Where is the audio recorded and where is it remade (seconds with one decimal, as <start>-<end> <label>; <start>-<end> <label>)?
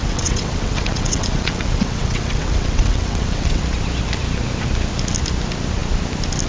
0.0-3.6 remade; 3.6-6.5 recorded